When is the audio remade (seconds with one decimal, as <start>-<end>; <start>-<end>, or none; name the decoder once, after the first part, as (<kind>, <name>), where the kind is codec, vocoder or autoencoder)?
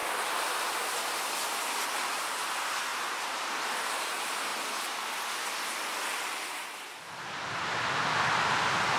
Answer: 2.9-4.1 (vocoder, BigVGAN v2)